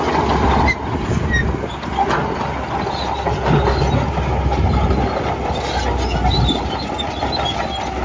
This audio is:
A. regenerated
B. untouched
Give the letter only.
B